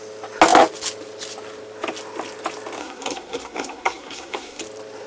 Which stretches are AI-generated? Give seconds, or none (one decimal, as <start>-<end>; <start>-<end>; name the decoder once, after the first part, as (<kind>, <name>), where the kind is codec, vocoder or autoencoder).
2.8-4.6 (codec, SNAC)